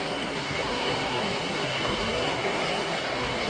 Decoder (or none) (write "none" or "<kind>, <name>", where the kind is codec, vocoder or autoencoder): codec, SNAC